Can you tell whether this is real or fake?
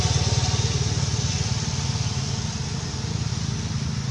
real